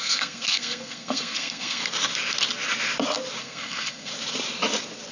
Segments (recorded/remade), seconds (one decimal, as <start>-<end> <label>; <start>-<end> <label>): 0.0-1.8 remade; 1.8-3.4 recorded; 3.4-4.1 remade; 4.1-5.1 recorded